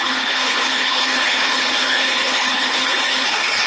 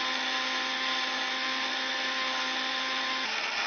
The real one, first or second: second